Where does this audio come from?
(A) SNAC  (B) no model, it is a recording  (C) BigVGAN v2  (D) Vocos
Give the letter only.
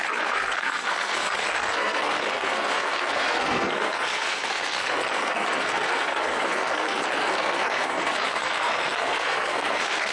A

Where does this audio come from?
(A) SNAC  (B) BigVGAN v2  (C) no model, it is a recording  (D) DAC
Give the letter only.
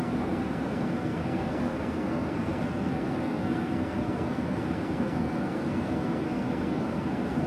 A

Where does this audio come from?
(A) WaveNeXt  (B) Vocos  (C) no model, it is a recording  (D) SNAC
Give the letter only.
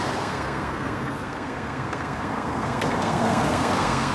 D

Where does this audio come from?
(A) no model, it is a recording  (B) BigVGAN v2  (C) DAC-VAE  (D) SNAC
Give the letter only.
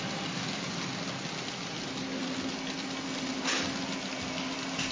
A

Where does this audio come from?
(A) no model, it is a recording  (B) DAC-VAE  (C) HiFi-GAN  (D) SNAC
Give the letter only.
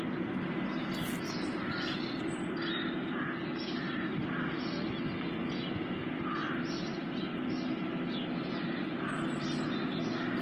A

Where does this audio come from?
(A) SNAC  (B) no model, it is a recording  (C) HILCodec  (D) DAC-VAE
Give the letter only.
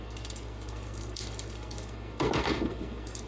A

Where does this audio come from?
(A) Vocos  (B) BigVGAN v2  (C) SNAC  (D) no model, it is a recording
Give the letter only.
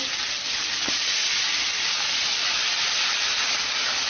D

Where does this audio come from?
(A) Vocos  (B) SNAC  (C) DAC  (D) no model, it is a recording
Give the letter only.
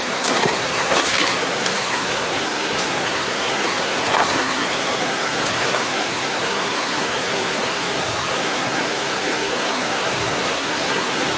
B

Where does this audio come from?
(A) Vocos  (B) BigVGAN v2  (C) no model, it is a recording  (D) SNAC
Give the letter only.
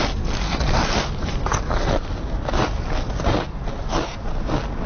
C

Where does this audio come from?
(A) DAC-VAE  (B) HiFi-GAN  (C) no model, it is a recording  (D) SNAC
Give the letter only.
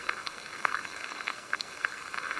D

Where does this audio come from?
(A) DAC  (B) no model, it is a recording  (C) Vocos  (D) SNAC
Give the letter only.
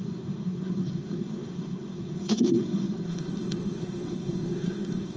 D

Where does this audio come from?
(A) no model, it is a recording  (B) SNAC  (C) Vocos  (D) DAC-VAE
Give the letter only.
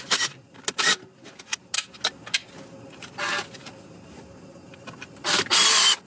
A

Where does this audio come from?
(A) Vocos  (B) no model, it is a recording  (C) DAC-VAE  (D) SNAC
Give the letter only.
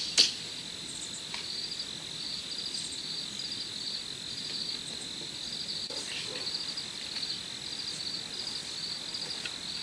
B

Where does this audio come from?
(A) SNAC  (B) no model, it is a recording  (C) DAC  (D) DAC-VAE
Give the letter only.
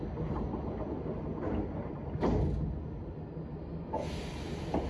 B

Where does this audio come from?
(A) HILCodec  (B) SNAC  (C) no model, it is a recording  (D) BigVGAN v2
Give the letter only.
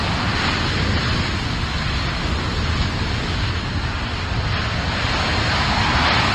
C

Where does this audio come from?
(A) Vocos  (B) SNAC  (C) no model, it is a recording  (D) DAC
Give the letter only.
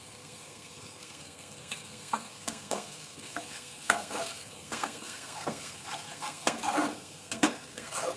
B